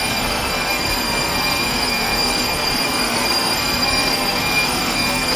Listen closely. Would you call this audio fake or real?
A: fake